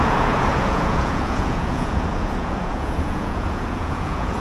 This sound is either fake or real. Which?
fake